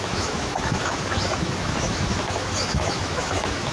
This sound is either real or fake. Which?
fake